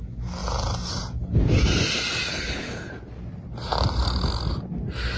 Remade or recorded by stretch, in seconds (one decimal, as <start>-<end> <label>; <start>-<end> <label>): 0.0-2.3 recorded; 2.3-2.9 remade; 2.9-5.2 recorded